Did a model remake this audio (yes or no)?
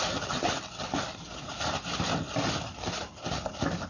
no